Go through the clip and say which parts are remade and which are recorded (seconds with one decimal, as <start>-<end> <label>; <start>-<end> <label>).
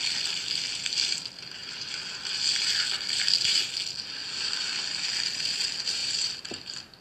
0.0-7.0 recorded